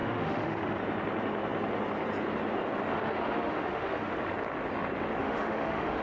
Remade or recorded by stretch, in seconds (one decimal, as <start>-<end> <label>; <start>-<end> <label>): 0.0-0.8 remade; 0.8-2.9 recorded; 2.9-4.2 remade; 4.2-5.2 recorded; 5.2-6.0 remade